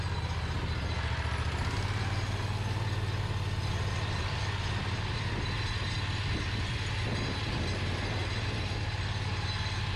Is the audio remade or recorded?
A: recorded